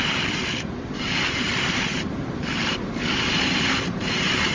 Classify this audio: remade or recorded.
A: remade